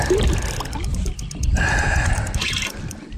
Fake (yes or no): no